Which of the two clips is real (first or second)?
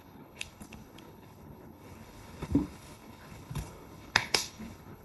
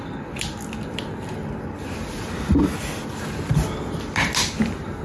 second